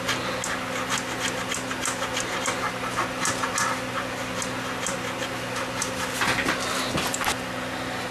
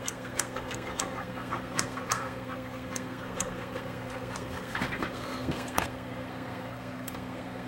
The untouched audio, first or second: first